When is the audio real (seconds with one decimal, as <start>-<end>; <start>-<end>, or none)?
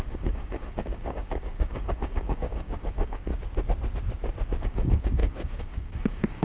3.3-4.6